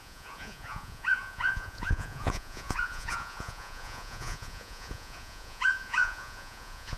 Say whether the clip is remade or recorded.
remade